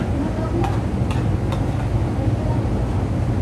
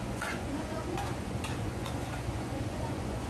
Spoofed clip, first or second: second